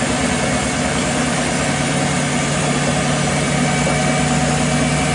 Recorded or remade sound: recorded